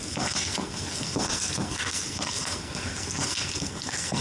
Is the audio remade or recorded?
remade